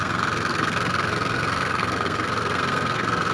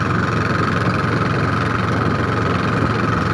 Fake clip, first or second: first